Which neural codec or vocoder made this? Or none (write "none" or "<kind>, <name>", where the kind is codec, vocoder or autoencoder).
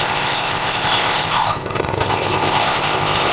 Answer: codec, ZipCodec